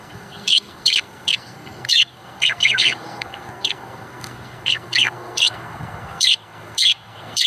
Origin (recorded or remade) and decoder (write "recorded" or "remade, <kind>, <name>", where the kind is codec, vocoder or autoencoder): remade, codec, SNAC